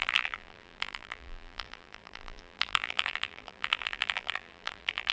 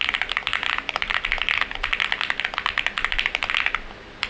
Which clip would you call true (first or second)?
second